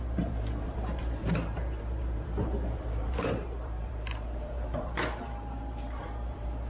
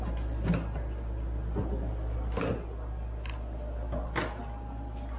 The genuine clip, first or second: second